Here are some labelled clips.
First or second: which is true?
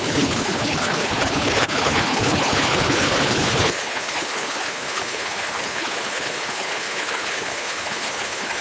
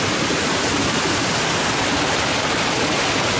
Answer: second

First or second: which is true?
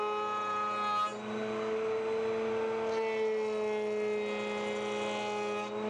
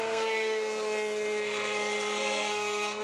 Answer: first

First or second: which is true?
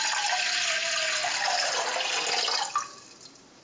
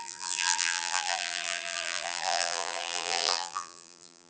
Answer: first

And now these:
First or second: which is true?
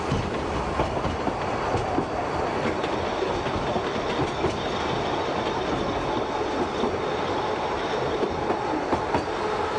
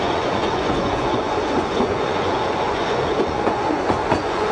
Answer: first